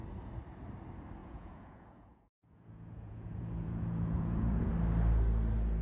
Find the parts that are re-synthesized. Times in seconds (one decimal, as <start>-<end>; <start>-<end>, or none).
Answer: 1.2-4.7